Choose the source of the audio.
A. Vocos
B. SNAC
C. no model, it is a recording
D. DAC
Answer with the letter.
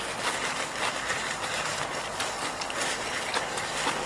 C